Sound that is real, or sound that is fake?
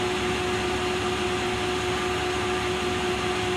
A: real